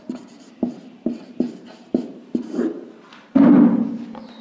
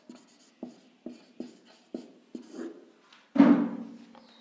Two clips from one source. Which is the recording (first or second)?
second